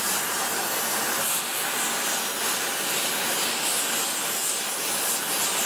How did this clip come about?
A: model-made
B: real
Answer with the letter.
B